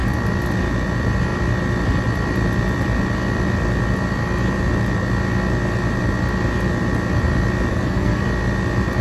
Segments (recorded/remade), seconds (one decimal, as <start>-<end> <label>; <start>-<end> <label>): 0.0-7.7 recorded; 7.7-8.2 remade; 8.2-9.0 recorded

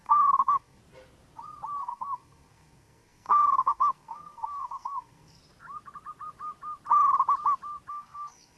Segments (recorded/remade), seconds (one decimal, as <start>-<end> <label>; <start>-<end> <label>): 0.0-0.8 remade; 0.8-1.8 recorded; 1.8-5.4 remade; 5.4-7.9 recorded; 7.9-8.6 remade

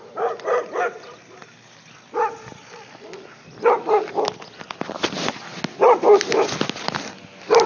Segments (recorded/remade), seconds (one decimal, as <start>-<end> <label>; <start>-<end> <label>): 0.0-7.7 recorded

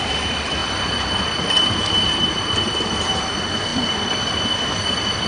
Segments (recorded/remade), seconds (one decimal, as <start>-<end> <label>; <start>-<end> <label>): 0.0-5.3 recorded

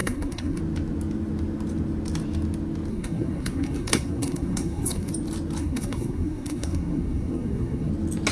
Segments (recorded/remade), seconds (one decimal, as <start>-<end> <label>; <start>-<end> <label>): 0.0-0.6 remade; 0.6-2.9 recorded; 2.9-5.1 remade; 5.1-5.6 recorded; 5.6-7.9 remade; 7.9-8.3 recorded

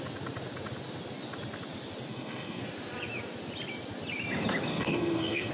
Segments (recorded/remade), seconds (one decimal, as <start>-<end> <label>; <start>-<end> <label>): 0.0-2.1 recorded; 2.1-2.6 remade; 2.6-4.7 recorded; 4.7-5.5 remade

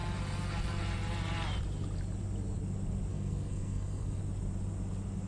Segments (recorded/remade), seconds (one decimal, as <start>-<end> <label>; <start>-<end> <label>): 0.0-3.1 recorded; 3.1-4.2 remade; 4.2-5.3 recorded